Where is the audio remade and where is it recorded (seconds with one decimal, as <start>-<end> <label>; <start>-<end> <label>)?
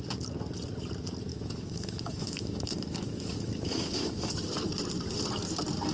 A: 0.0-1.3 recorded; 1.3-4.3 remade; 4.3-5.9 recorded